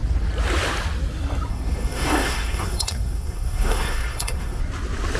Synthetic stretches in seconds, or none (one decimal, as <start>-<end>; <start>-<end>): 1.5-4.6